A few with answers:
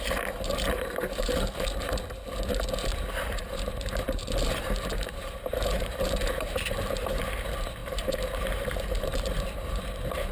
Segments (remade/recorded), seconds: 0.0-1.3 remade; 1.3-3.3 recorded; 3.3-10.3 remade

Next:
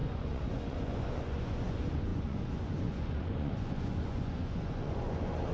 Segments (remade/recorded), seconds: 0.0-5.5 remade

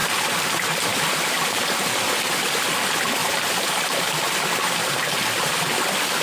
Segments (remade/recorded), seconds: 0.0-0.5 remade; 0.5-0.9 recorded; 0.9-2.2 remade; 2.2-3.2 recorded; 3.2-4.2 remade; 4.2-4.8 recorded; 4.8-5.5 remade; 5.5-6.2 recorded

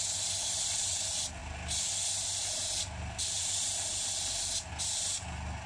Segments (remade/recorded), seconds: 0.0-5.7 recorded

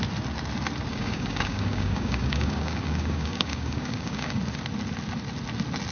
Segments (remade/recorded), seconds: 0.0-0.9 recorded; 0.9-4.4 remade; 4.4-5.9 recorded

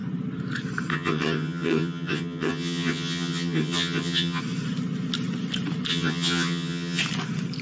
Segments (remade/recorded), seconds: 0.0-0.9 recorded; 0.9-4.4 remade; 4.4-5.9 recorded; 5.9-7.0 remade; 7.0-7.6 recorded